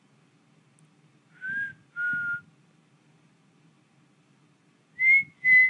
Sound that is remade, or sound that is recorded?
recorded